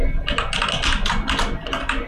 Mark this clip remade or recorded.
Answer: recorded